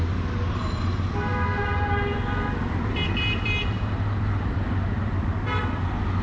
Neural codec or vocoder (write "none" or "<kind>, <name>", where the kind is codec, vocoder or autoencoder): none